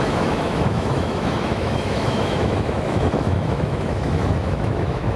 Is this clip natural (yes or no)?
no